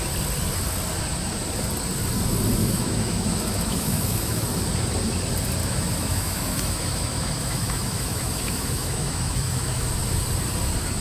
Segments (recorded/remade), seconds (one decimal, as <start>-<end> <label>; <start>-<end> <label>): 0.0-2.6 recorded; 2.6-4.5 remade; 4.5-5.6 recorded; 5.6-9.9 remade; 9.9-11.0 recorded